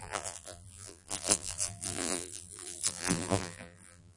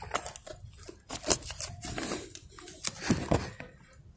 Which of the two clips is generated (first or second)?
first